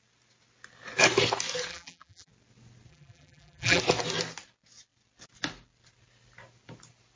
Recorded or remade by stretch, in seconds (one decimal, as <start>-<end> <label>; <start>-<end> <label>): 0.0-1.7 recorded; 1.7-2.3 remade; 2.3-2.9 recorded; 2.9-3.8 remade; 3.8-7.2 recorded